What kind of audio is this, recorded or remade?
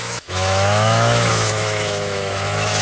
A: remade